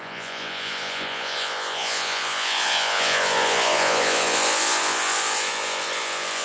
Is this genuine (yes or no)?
no